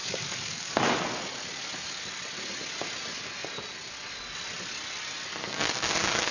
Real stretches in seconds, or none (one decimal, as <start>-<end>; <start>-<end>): 0.7-5.4